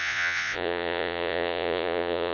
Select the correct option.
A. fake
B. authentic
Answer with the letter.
A